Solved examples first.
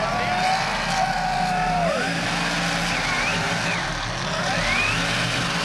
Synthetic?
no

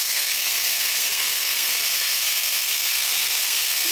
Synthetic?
yes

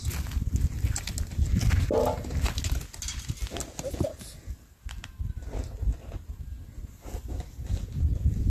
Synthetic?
no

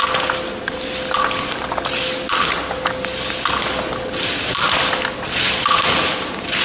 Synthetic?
no